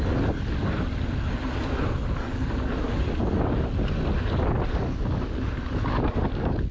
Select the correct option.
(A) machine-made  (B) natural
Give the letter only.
B